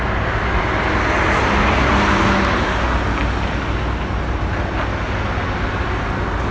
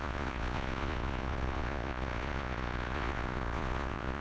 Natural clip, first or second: first